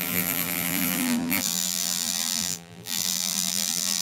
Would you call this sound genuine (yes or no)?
no